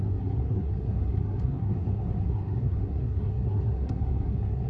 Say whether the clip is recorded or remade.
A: remade